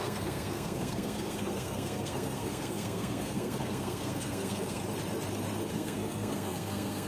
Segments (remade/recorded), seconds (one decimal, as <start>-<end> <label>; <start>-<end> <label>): 0.0-4.8 remade; 4.8-5.7 recorded; 5.7-7.1 remade